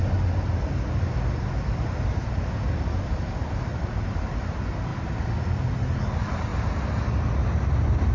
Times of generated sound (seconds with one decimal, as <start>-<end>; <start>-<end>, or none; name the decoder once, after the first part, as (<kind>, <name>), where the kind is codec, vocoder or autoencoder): none